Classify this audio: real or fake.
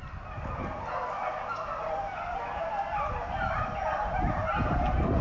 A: real